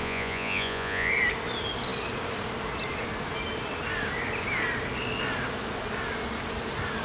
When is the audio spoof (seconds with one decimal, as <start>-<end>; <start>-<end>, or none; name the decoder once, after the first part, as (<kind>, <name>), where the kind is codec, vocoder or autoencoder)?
0.0-1.1 (vocoder, Vocos)